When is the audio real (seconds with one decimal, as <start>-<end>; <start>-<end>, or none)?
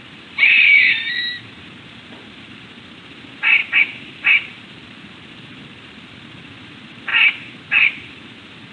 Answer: none